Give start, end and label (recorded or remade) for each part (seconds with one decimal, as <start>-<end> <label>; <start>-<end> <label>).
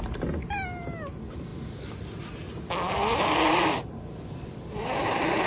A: 0.0-5.5 recorded